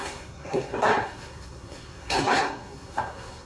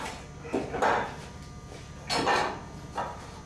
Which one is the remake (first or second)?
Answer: first